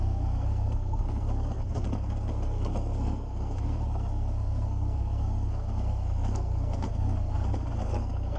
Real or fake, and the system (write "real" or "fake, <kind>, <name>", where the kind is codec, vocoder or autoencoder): fake, codec, SNAC